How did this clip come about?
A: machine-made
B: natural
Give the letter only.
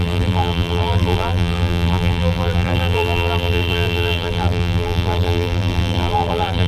A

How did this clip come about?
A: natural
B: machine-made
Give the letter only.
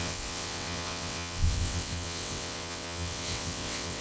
B